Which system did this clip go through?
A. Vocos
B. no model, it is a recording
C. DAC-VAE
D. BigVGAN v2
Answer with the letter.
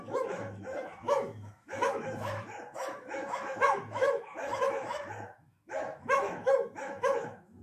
C